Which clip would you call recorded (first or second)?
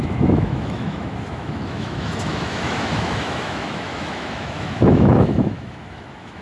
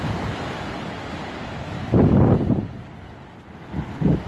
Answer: second